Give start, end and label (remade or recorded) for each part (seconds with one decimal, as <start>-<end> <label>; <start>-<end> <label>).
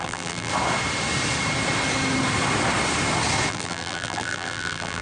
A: 0.0-0.5 remade; 0.5-3.5 recorded; 3.5-5.0 remade